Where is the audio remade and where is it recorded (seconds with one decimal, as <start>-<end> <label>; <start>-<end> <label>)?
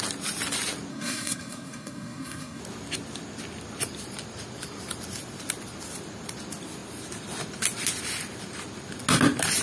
0.0-0.9 recorded; 0.9-2.6 remade; 2.6-9.6 recorded